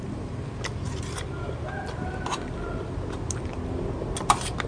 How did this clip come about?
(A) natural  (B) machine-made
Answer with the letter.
A